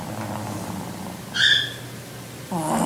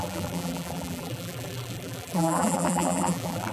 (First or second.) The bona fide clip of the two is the first